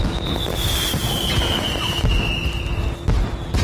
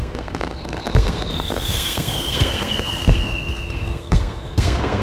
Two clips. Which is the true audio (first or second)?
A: first